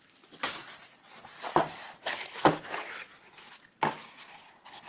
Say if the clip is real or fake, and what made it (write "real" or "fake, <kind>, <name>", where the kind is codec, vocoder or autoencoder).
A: real